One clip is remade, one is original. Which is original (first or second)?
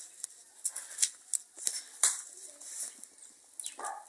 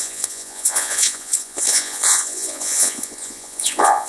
first